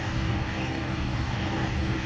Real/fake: fake